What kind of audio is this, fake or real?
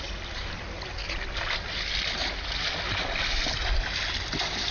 real